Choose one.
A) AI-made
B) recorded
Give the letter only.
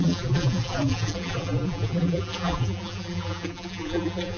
A